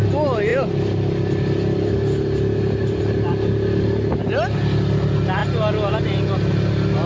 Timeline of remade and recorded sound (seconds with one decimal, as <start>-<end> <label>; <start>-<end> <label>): 0.0-7.1 recorded